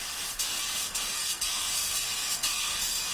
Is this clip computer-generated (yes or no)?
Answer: yes